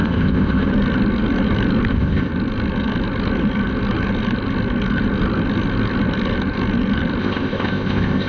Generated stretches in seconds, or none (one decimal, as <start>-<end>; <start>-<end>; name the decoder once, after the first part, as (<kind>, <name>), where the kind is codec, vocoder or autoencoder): 0.0-0.7 (codec, ZipCodec); 1.9-2.3; 7.2-8.3